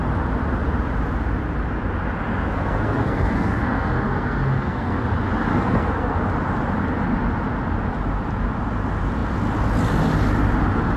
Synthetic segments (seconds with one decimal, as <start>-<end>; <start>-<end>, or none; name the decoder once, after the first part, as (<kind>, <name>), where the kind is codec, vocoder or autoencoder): 2.5-5.0 (codec, SNAC); 5.5-6.2